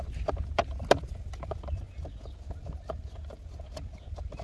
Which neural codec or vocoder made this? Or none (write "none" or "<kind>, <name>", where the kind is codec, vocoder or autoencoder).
none